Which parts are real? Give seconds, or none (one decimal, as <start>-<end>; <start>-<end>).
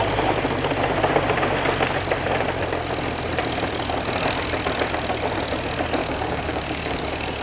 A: 0.0-6.0; 7.0-7.4